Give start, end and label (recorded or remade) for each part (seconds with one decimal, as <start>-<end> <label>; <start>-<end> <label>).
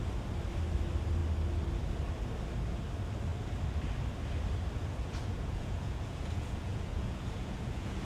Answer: 0.0-4.8 recorded; 4.8-8.0 remade